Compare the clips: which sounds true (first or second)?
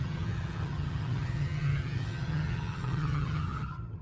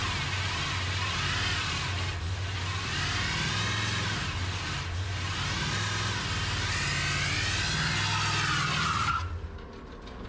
second